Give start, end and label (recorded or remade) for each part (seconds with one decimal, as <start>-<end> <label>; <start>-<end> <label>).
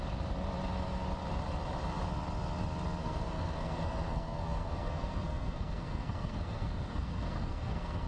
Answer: 0.0-3.0 recorded; 3.0-8.1 remade